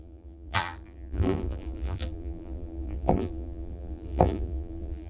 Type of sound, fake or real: fake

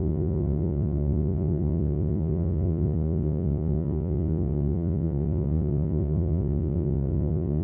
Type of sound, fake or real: fake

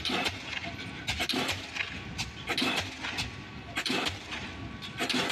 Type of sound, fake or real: real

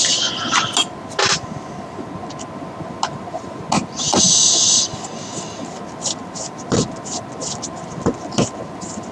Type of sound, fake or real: real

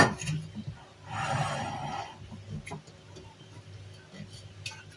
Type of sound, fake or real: real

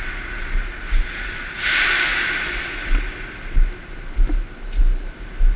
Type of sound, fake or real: real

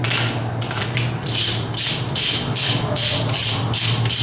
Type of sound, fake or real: real